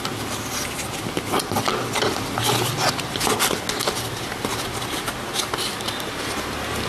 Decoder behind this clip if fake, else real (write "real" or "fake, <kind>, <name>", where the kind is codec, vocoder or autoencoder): real